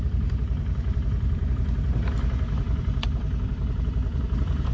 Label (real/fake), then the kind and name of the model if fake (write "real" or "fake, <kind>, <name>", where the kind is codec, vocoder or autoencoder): fake, vocoder, BigVGAN v2